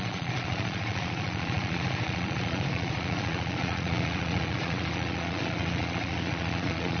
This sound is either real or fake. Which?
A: fake